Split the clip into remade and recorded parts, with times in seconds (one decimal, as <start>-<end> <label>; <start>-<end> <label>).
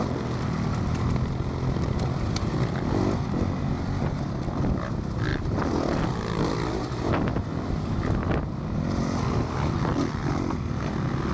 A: 0.0-11.3 recorded